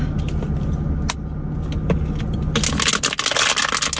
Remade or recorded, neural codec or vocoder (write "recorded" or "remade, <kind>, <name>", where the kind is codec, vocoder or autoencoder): recorded